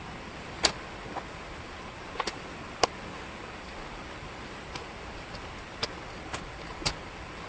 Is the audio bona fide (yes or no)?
yes